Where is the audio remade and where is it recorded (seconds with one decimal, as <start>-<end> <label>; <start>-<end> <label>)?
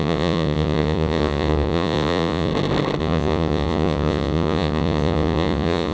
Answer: 0.0-2.5 remade; 2.5-3.0 recorded; 3.0-5.9 remade